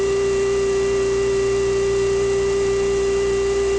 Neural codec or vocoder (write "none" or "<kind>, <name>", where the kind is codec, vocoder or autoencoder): none